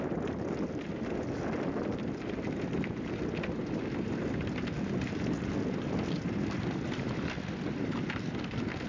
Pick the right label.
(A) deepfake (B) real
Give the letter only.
B